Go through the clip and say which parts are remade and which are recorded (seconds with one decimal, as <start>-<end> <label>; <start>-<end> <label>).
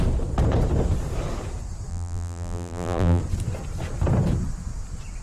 0.0-1.9 recorded; 1.9-3.2 remade; 3.2-5.2 recorded